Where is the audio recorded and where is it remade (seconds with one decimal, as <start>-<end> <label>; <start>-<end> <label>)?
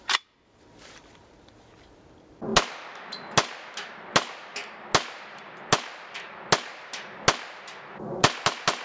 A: 0.0-8.8 recorded